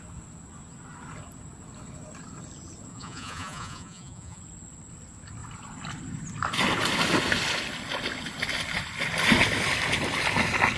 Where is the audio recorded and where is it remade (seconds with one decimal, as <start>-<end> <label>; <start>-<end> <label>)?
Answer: 0.0-2.9 recorded; 2.9-4.4 remade; 4.4-10.8 recorded